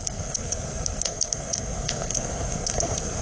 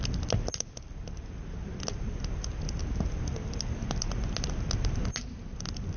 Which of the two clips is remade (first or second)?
first